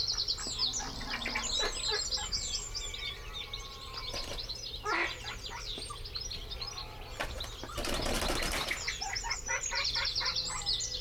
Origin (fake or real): real